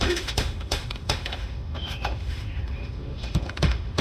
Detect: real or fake fake